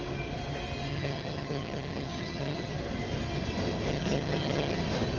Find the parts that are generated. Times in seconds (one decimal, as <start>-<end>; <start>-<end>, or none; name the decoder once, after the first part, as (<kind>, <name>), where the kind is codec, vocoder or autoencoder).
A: 0.9-2.7 (vocoder, HiFi-GAN); 3.9-4.8